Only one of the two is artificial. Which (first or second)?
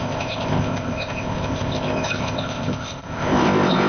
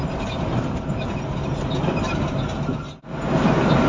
first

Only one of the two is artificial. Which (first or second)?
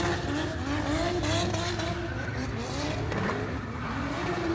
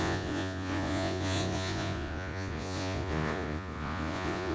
second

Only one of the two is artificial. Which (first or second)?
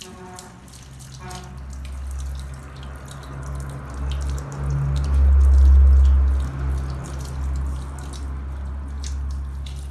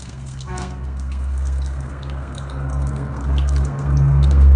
second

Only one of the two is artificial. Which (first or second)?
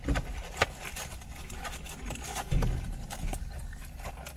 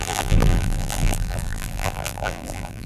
second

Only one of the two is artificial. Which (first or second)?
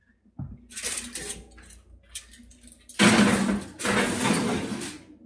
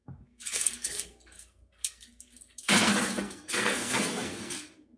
second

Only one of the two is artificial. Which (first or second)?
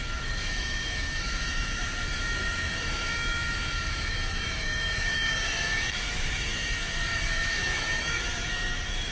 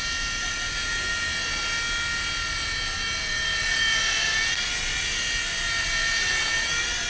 first